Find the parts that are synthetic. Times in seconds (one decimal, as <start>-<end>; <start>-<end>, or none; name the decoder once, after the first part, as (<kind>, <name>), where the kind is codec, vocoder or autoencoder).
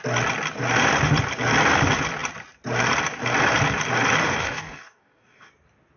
4.2-5.5 (codec, DAC)